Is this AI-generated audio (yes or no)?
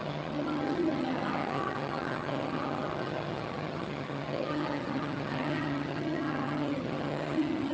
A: yes